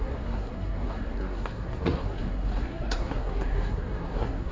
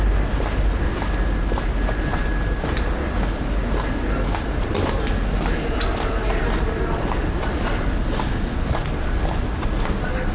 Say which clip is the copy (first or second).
first